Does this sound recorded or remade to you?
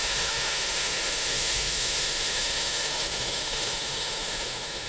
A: remade